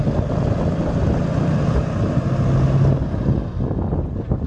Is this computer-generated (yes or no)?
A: no